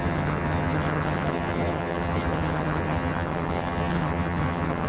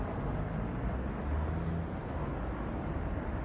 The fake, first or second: first